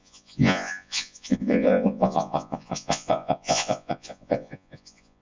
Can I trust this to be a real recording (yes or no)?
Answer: no